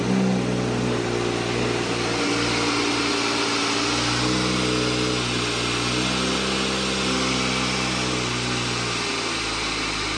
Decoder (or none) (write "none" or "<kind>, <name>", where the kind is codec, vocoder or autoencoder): none